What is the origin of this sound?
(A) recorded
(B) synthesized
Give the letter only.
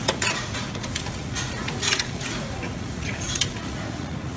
B